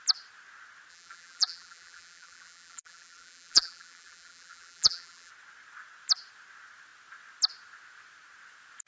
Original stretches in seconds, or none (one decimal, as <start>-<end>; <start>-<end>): 0.0-0.9; 5.3-8.9